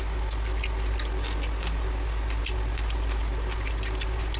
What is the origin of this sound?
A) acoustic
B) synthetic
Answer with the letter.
A